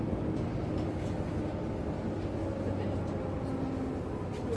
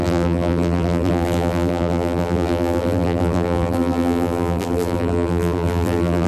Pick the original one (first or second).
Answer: first